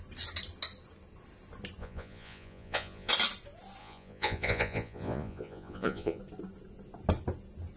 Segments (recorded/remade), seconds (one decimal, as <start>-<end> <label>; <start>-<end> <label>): 0.0-1.8 recorded; 1.8-3.1 remade; 3.1-3.8 recorded; 3.8-6.2 remade; 6.2-7.8 recorded